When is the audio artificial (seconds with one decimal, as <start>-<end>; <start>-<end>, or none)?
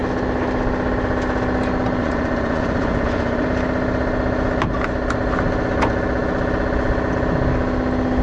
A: 2.0-3.4